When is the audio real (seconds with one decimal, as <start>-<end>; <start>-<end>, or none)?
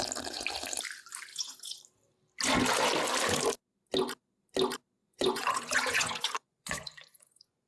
0.0-1.3; 1.8-5.0